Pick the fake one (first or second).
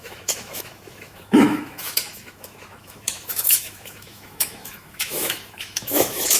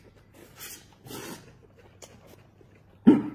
first